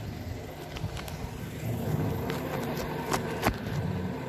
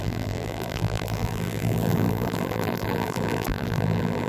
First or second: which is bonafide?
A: first